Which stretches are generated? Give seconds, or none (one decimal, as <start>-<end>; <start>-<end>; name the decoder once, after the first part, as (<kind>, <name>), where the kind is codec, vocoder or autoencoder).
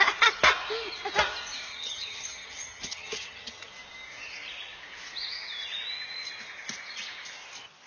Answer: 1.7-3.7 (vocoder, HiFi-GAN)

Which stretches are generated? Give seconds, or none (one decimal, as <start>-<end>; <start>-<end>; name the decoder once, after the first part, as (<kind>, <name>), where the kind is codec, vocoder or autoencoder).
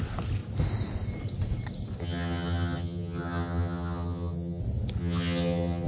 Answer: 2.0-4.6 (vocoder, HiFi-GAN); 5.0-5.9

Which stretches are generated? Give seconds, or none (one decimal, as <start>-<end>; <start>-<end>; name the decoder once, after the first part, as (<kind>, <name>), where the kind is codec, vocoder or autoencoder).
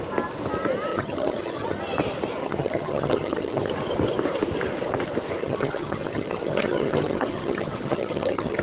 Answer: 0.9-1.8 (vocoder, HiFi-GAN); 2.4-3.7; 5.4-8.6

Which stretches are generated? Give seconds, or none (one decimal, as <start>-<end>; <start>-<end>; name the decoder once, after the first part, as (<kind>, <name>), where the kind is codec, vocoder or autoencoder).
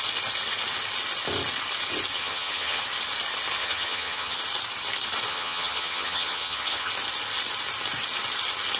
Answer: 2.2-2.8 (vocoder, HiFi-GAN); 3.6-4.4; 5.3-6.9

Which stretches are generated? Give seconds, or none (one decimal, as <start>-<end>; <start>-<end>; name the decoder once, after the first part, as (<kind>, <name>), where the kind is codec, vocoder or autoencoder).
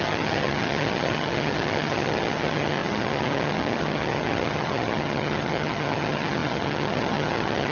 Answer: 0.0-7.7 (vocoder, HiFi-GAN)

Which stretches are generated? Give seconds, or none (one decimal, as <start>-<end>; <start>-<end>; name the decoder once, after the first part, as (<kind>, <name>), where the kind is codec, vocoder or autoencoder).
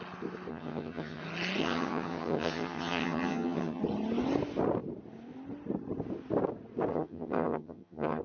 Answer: 0.5-1.2 (vocoder, HiFi-GAN); 1.6-3.8; 6.9-8.2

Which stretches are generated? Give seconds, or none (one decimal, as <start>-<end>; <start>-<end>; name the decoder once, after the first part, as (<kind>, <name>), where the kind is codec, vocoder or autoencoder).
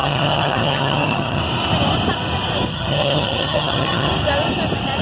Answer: 0.0-1.4 (vocoder, HiFi-GAN); 2.7-4.1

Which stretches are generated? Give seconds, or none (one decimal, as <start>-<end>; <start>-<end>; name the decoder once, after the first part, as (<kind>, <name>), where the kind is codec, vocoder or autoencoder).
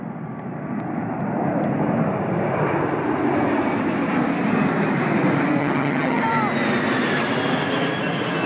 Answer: 5.6-6.2 (vocoder, HiFi-GAN)